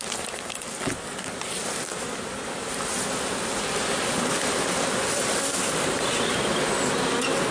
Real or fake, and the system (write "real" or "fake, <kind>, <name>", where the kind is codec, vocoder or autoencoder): real